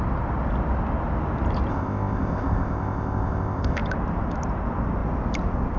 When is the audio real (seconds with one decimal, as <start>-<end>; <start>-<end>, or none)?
0.0-1.7; 3.8-5.8